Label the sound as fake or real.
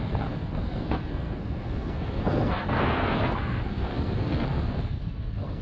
fake